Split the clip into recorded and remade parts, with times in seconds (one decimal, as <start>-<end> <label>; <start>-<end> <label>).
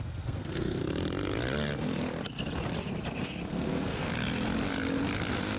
0.0-0.8 remade; 0.8-3.5 recorded; 3.5-4.1 remade; 4.1-5.6 recorded